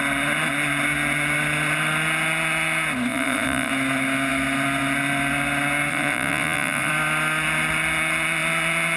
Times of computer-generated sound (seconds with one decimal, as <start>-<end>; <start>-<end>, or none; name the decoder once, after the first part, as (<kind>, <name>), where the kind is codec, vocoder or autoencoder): 3.1-3.7 (vocoder, Vocos); 5.9-6.9